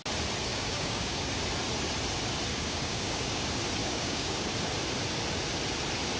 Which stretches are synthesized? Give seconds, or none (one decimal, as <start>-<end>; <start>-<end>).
0.5-1.3; 2.5-3.4; 3.8-4.5